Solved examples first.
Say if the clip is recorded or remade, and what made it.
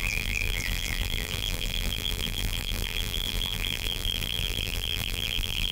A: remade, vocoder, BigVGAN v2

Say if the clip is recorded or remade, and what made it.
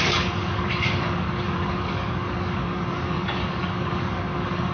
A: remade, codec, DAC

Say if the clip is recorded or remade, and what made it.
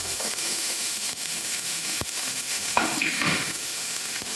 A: remade, autoencoder, DAC-VAE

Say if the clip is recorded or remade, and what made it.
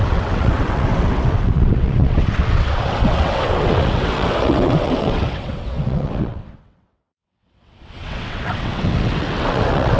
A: remade, vocoder, WaveNeXt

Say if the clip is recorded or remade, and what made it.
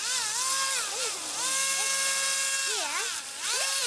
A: recorded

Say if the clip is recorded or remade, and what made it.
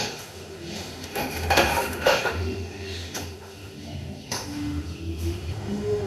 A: remade, autoencoder, DAC-VAE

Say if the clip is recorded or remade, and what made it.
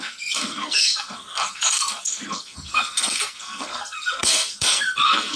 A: remade, codec, SNAC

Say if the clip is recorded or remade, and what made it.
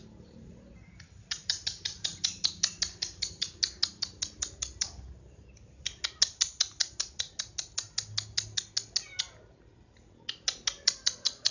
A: recorded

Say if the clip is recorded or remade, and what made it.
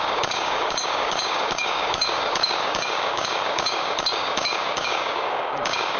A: remade, codec, DAC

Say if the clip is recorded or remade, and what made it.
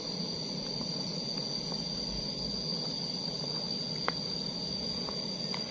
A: recorded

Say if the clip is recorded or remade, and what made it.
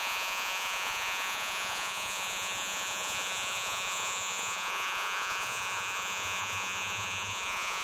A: remade, vocoder, Vocos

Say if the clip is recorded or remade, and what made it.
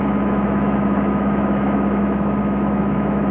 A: remade, autoencoder, DAC-VAE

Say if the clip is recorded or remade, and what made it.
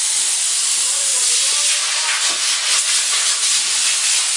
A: recorded